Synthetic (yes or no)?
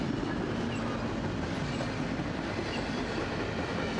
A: no